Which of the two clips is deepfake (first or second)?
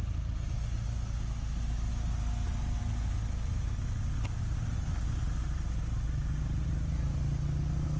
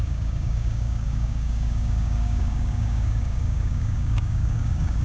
second